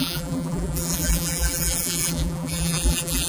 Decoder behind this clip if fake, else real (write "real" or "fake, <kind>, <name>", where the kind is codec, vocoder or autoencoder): fake, vocoder, BigVGAN v2